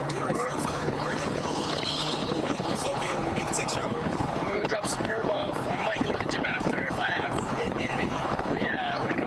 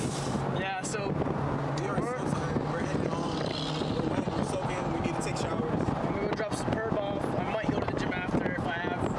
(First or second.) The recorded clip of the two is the second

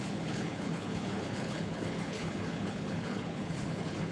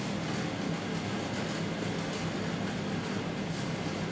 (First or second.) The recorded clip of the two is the second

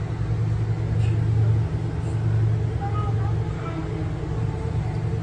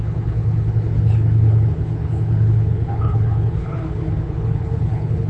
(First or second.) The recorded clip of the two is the first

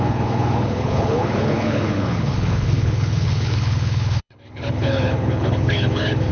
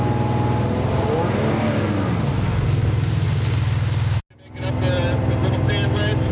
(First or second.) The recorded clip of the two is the second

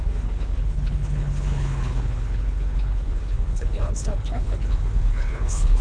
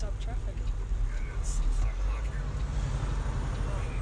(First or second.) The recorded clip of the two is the second